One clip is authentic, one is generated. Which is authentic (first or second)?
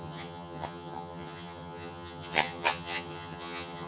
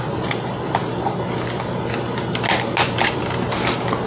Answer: second